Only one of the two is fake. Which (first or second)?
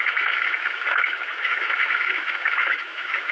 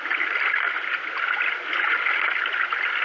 first